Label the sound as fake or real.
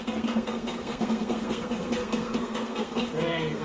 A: fake